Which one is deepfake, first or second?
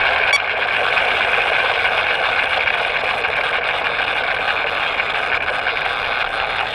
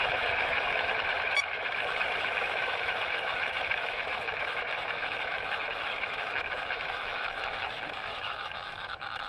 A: second